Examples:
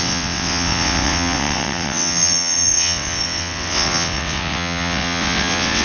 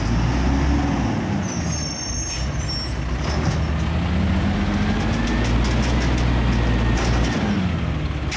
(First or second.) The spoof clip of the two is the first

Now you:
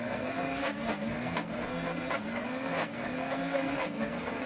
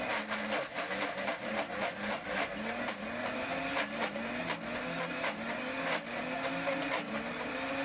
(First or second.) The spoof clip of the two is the first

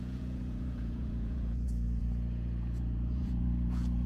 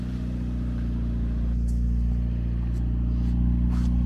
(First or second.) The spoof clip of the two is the first